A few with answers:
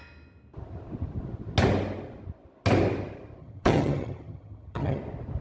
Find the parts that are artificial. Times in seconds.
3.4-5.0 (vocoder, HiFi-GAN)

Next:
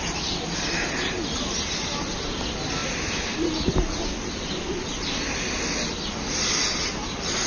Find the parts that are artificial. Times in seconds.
none

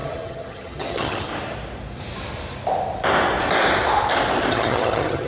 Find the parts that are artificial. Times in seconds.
0.0-1.3 (vocoder, HiFi-GAN); 4.5-5.3